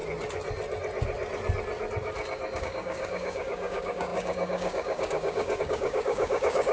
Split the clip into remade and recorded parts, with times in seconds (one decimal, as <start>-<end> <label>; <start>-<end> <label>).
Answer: 0.0-2.6 recorded; 2.6-6.7 remade